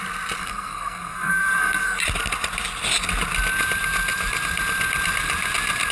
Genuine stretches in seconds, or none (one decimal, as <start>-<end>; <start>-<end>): 0.0-0.4; 2.0-5.9